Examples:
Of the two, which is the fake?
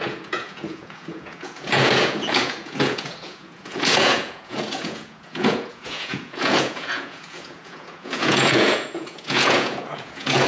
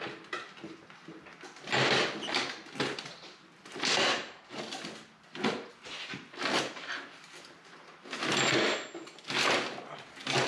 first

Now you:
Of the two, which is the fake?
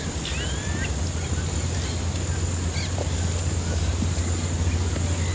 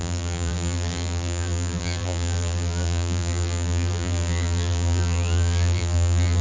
second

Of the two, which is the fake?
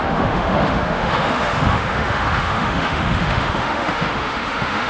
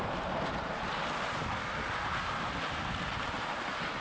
first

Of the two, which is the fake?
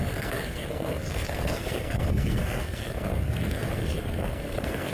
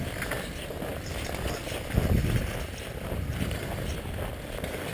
first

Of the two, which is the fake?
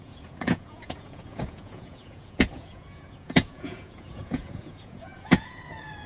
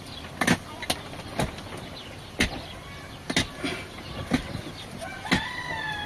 first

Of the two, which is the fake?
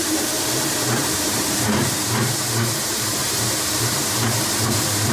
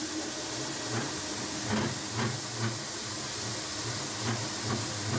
first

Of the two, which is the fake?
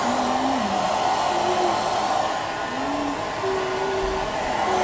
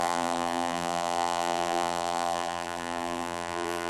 second